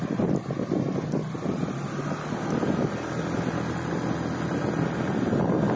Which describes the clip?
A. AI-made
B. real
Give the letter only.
B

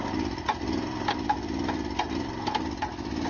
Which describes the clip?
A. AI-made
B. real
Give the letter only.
A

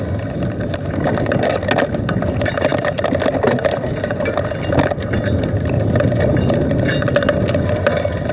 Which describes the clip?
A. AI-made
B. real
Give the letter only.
B